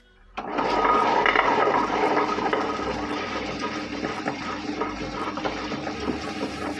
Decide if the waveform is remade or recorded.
remade